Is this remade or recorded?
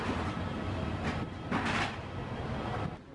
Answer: recorded